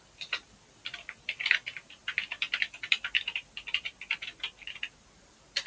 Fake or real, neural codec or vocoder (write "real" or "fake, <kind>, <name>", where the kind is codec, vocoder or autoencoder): fake, vocoder, BigVGAN v2